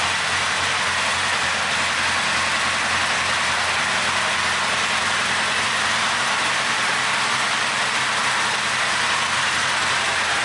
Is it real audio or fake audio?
real